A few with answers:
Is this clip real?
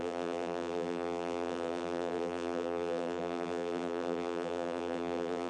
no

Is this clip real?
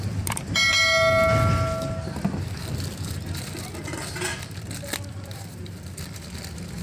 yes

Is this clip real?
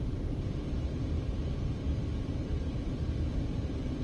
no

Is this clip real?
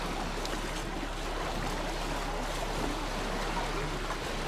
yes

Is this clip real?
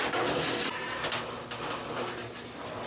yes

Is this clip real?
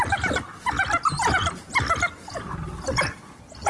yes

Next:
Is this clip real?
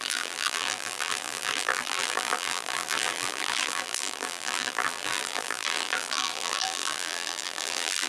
no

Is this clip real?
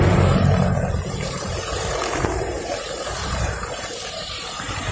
no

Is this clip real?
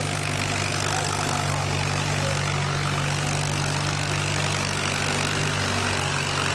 yes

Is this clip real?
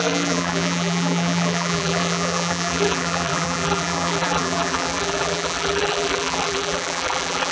no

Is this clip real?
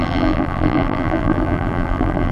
no